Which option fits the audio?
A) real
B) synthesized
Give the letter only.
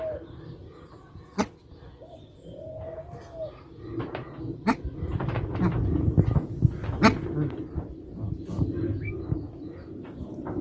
A